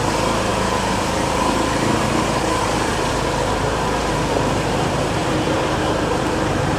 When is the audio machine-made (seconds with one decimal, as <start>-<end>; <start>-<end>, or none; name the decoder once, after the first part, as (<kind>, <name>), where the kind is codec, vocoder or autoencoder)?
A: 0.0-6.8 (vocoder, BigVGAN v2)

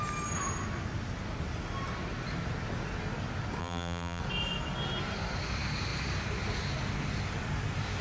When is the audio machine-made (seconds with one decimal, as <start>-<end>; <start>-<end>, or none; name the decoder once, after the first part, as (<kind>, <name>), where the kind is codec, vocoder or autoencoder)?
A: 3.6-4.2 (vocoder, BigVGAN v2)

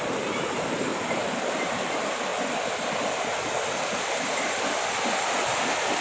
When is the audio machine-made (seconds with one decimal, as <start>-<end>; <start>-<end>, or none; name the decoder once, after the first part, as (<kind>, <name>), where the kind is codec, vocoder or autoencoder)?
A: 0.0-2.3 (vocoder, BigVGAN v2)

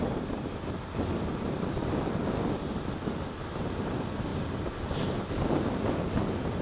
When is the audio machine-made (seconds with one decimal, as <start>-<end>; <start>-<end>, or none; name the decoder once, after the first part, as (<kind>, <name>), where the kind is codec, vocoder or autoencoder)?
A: none

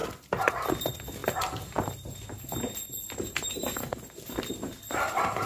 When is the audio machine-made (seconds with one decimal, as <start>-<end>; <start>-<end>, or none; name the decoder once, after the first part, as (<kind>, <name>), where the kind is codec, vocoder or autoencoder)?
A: none

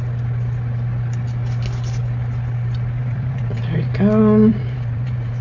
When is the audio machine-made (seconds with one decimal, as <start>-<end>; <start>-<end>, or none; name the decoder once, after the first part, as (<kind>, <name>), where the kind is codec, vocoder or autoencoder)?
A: 3.0-4.0 (vocoder, BigVGAN v2); 4.5-5.4

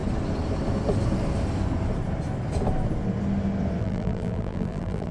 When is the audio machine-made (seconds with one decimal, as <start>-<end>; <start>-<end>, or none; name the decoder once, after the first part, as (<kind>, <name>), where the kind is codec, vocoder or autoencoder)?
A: 3.8-5.1 (vocoder, BigVGAN v2)

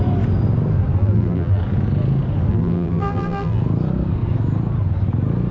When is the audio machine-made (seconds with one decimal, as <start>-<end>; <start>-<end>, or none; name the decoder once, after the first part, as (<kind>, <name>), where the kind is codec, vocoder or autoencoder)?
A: 1.0-1.6 (vocoder, BigVGAN v2); 2.5-3.6